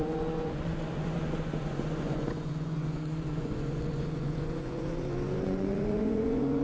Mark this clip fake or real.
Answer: fake